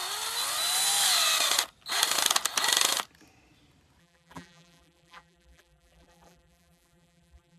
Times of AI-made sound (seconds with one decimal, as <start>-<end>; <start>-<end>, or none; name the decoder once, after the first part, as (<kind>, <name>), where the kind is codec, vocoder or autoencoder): 4.0-7.6 (vocoder, BigVGAN v2)